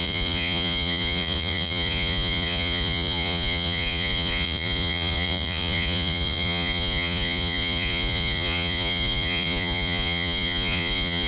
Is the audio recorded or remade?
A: remade